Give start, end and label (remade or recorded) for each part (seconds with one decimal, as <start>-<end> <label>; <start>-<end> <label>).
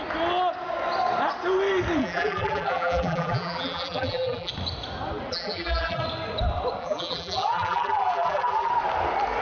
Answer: 0.0-2.0 recorded; 2.0-4.5 remade; 4.5-5.3 recorded; 5.3-6.0 remade; 6.0-6.8 recorded; 6.8-8.7 remade; 8.7-9.4 recorded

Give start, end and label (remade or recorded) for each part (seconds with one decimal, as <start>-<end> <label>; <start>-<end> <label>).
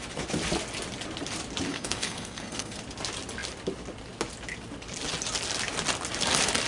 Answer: 0.0-1.7 recorded; 1.7-2.8 remade; 2.8-6.7 recorded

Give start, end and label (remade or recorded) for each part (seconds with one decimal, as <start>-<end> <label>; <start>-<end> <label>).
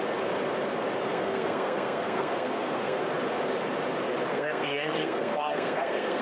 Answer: 0.0-1.1 recorded; 1.1-3.0 remade; 3.0-4.3 recorded; 4.3-6.2 remade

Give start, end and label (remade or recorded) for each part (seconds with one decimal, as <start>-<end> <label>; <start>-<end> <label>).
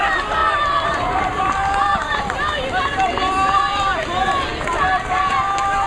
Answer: 0.0-0.4 recorded; 0.4-3.9 remade; 3.9-5.9 recorded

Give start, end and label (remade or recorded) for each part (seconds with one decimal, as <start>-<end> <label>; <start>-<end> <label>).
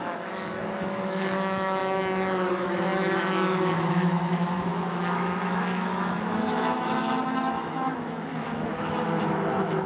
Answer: 0.0-9.9 remade